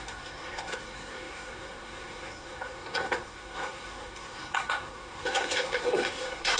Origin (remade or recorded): remade